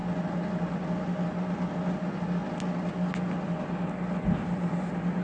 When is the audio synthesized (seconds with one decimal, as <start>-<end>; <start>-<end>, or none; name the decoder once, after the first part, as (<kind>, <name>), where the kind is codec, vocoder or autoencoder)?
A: none